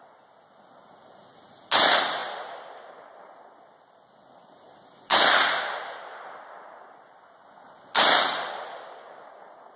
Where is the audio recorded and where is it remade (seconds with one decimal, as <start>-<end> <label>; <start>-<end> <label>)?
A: 0.0-9.8 recorded